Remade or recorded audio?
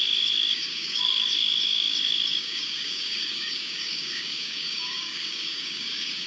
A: remade